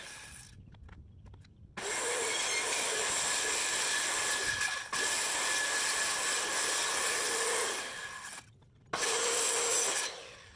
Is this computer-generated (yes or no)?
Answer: no